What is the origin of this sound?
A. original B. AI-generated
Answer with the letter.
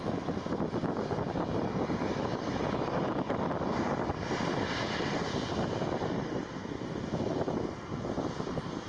A